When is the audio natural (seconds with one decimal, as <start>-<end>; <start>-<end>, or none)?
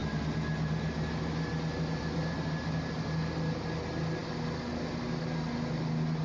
0.0-6.2